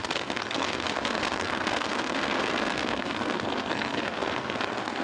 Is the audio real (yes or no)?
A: no